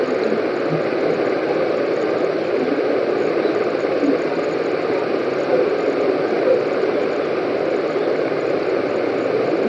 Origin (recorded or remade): recorded